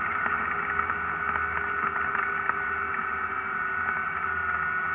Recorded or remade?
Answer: recorded